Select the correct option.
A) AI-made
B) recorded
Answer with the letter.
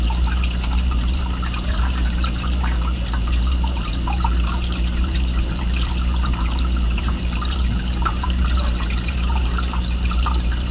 A